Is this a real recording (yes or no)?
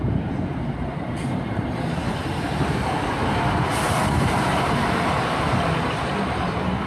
no